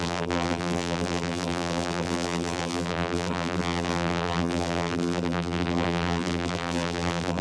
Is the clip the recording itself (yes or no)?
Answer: no